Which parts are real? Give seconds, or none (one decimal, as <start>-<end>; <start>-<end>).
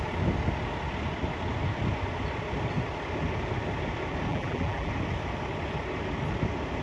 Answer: 0.0-4.3; 4.9-6.8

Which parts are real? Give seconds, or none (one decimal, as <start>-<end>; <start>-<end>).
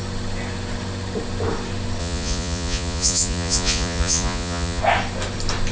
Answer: 0.0-2.0; 4.8-5.7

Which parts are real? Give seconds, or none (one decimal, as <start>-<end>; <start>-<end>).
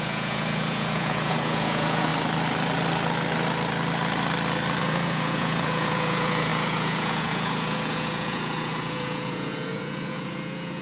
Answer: 2.1-4.8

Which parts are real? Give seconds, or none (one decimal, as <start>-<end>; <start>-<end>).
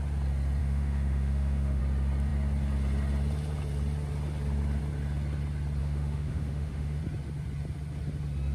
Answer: 0.0-0.6; 1.8-5.8; 7.0-8.5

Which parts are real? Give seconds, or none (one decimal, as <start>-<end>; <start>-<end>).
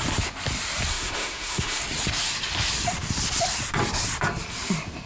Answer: 0.0-0.9; 1.8-5.1